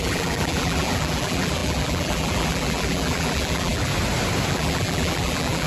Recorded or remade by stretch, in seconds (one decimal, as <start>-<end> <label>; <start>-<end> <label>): 0.0-3.9 remade; 3.9-4.5 recorded; 4.5-5.7 remade